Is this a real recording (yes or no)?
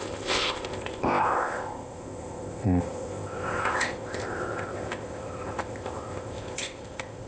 no